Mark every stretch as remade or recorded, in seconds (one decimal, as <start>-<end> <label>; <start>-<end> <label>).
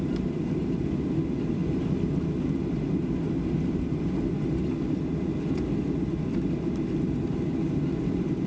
0.0-8.5 recorded